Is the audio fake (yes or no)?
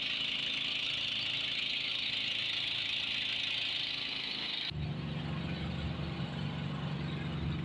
no